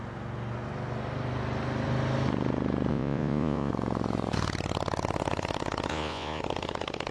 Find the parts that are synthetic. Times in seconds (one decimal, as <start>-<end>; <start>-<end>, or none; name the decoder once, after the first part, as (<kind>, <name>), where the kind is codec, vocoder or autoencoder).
2.9-3.7 (vocoder, Vocos); 5.9-6.4